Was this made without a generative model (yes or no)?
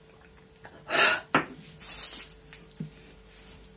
yes